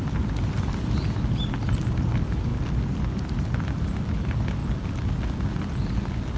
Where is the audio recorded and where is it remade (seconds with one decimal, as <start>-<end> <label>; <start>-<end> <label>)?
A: 0.0-6.4 recorded